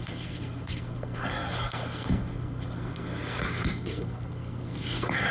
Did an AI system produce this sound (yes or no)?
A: yes